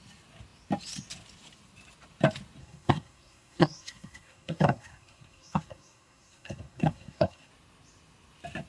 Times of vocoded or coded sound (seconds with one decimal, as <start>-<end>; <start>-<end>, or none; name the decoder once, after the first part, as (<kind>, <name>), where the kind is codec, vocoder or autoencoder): 2.6-7.5 (codec, SNAC)